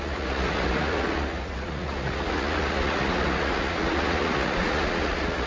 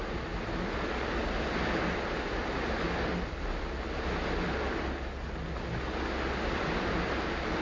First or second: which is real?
second